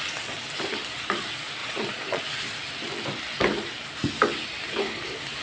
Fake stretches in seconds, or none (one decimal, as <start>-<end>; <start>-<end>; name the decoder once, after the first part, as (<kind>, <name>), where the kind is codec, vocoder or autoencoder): 1.6-2.2 (vocoder, Vocos)